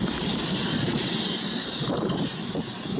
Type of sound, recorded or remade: recorded